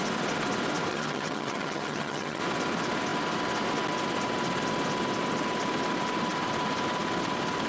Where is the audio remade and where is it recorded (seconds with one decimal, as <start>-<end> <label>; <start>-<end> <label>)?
0.0-0.9 recorded; 0.9-2.4 remade; 2.4-7.7 recorded